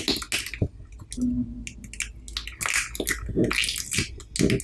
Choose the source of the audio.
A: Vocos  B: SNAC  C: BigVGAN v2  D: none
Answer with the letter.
D